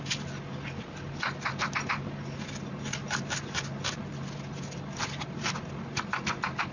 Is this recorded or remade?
recorded